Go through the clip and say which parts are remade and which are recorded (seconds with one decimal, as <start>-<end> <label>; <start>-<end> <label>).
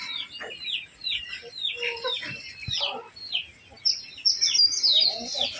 0.0-5.6 recorded